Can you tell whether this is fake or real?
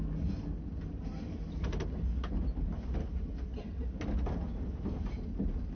real